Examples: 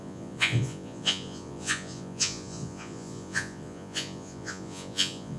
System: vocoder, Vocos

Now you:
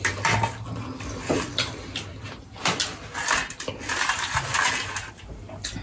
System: none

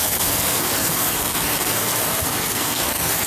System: codec, SNAC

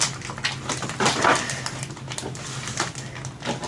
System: none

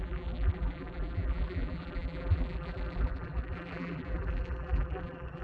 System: vocoder, BigVGAN v2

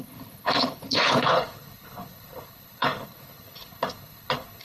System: codec, HILCodec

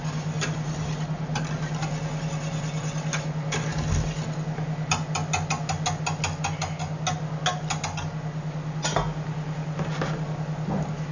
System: none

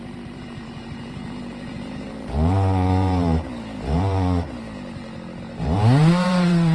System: vocoder, BigVGAN v2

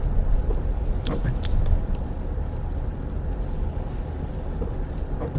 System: none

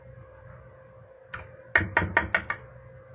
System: none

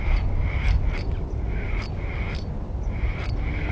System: none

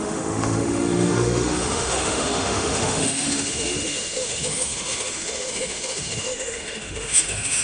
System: autoencoder, DAC-VAE